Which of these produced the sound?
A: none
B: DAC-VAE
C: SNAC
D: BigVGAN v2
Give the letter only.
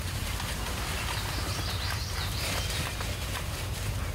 D